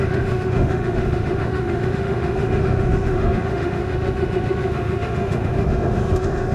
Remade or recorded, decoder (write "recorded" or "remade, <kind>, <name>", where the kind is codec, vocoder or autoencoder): remade, autoencoder, DAC-VAE